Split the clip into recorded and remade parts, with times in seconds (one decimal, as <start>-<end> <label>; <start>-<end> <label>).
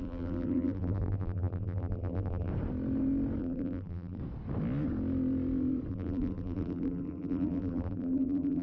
0.0-2.5 remade; 2.5-3.4 recorded; 3.4-4.2 remade; 4.2-5.9 recorded; 5.9-8.6 remade